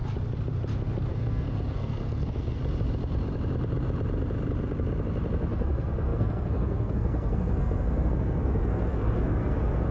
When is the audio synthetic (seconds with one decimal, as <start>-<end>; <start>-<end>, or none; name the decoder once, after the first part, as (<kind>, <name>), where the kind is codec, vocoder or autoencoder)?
1.1-2.6 (codec, SNAC); 5.5-9.9